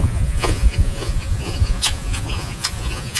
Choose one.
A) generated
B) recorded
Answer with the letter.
A